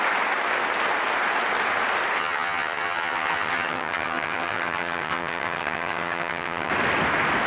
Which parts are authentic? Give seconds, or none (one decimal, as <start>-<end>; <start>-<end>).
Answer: 0.0-2.2; 6.7-7.5